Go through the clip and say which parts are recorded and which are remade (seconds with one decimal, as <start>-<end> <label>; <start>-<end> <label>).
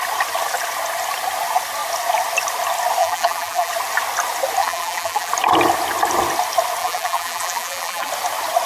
0.0-3.0 recorded; 3.0-3.7 remade; 3.7-4.6 recorded; 4.6-5.3 remade; 5.3-6.8 recorded; 6.8-8.1 remade; 8.1-8.7 recorded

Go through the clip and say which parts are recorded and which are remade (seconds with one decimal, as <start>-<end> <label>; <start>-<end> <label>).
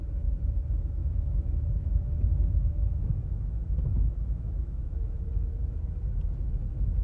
0.0-1.0 recorded; 1.0-5.2 remade; 5.2-7.0 recorded